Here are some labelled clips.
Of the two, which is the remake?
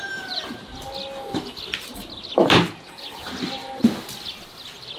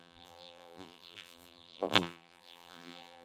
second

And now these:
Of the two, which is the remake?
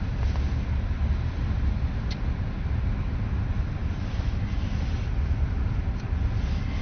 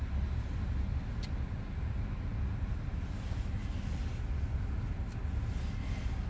first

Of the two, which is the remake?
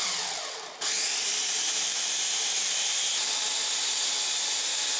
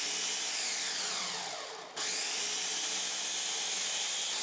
first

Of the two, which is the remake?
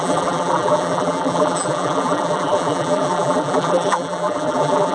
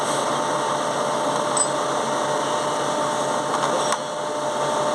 first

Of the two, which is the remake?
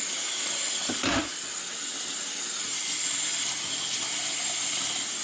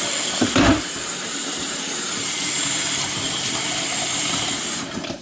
second